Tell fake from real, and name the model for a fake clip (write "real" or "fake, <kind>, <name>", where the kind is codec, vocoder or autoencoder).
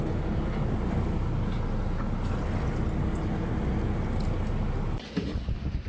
real